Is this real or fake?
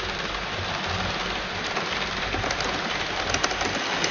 real